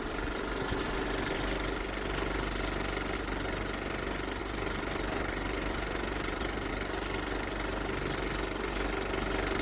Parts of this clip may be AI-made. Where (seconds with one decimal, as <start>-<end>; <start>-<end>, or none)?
4.4-6.7